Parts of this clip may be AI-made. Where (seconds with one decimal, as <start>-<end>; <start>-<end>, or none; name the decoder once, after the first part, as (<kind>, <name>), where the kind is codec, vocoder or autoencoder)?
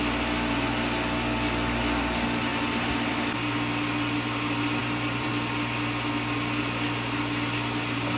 4.8-5.3 (vocoder, BigVGAN v2)